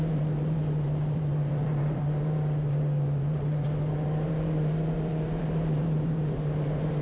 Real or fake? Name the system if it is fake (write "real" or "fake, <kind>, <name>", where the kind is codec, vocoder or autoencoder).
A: fake, vocoder, BigVGAN v2